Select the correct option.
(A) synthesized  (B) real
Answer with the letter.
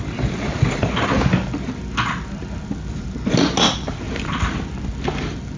B